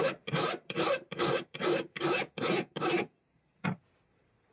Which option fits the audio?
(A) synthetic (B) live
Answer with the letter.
A